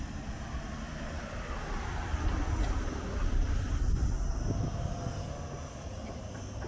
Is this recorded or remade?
remade